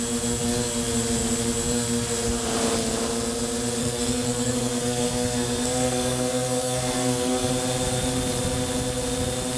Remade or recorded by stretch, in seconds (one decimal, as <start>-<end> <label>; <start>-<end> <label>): 0.0-3.8 recorded; 3.8-7.5 remade; 7.5-9.6 recorded